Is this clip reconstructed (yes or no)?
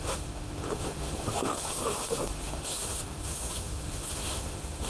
yes